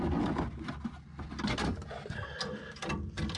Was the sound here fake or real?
real